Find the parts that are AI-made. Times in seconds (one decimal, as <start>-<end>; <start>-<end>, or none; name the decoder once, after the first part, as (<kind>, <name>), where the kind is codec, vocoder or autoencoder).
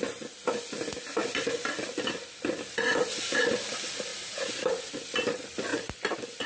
4.1-4.9 (vocoder, BigVGAN v2); 5.7-6.5